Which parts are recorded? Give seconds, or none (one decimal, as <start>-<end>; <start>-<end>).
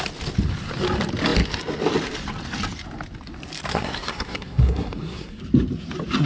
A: 0.0-3.7; 5.4-6.3